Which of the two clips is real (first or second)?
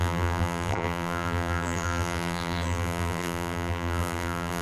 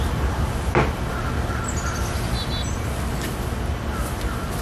second